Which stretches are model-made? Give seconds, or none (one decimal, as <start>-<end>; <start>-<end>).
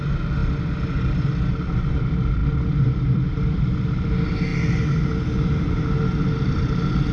2.4-4.1